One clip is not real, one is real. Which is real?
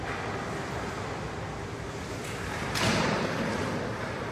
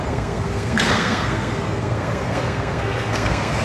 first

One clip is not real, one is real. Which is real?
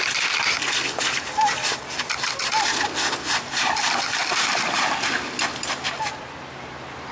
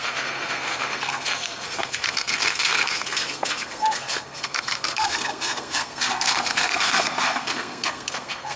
first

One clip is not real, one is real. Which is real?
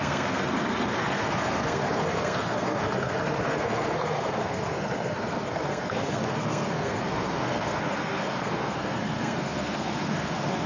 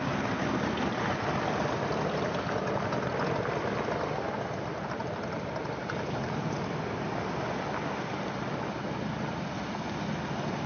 second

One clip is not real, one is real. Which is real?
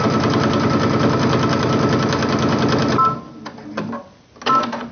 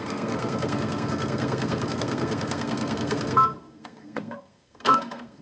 first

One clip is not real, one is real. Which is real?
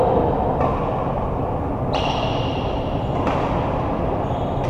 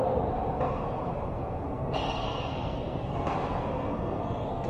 first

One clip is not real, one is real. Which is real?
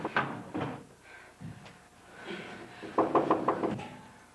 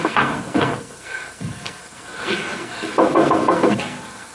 first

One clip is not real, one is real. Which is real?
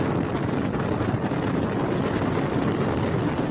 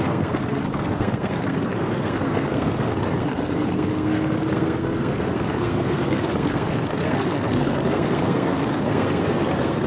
first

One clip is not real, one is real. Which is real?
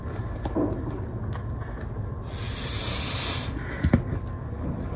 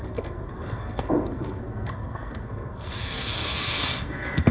first